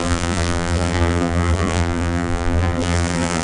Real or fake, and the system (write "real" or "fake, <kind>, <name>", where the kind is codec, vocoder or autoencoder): fake, vocoder, BigVGAN v2